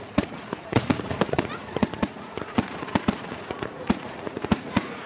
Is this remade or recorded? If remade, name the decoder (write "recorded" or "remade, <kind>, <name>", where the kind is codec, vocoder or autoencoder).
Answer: remade, vocoder, Vocos